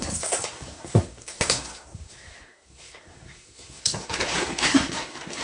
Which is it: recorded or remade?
remade